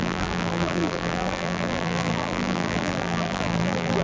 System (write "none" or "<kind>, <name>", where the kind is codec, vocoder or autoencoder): vocoder, BigVGAN v2